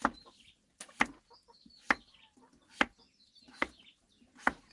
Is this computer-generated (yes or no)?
no